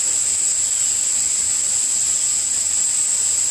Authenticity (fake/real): real